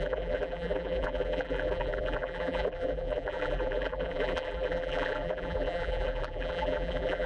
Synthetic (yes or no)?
yes